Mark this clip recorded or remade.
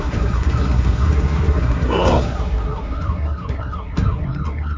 remade